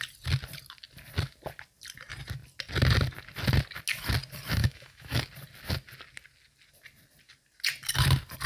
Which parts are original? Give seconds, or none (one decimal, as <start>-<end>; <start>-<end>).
0.0-4.6; 5.2-8.5